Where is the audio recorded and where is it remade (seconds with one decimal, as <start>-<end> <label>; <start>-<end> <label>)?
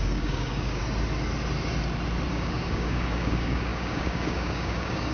0.0-0.8 remade; 0.8-2.3 recorded; 2.3-5.1 remade